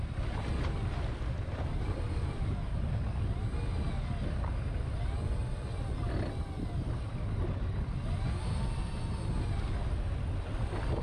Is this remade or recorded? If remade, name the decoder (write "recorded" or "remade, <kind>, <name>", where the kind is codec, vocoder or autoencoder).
recorded